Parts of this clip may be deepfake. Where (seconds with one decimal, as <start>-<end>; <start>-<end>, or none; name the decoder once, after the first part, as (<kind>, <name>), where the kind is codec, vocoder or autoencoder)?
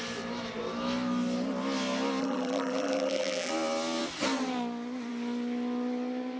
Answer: 2.2-3.5 (vocoder, BigVGAN v2)